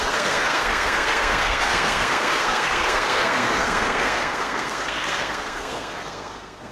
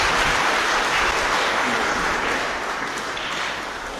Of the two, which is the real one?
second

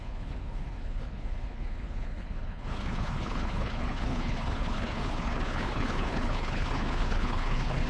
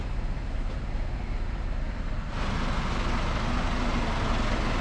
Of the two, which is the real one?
second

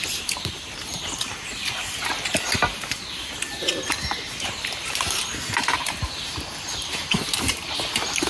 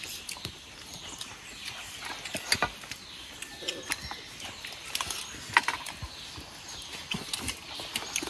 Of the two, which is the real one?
second